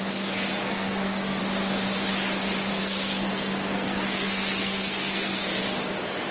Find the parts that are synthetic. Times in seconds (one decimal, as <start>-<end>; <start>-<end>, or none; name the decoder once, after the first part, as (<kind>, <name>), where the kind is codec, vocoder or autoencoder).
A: 0.6-1.4 (codec, SNAC); 2.7-5.6